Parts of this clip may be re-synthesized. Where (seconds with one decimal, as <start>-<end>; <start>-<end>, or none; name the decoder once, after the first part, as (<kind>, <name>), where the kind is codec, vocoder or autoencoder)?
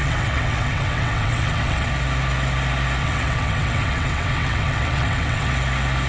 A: 0.0-1.9 (vocoder, WaveNeXt); 3.0-5.5